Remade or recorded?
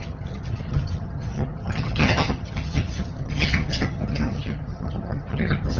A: remade